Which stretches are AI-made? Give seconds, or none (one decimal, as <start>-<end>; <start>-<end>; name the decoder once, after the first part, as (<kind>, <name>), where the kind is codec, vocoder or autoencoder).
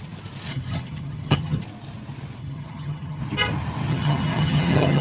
0.5-1.6 (vocoder, HiFi-GAN); 2.4-3.2; 3.9-5.0